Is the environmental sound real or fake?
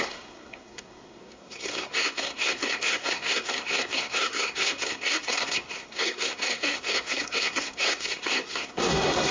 fake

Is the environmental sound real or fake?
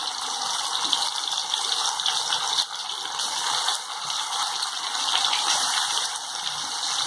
real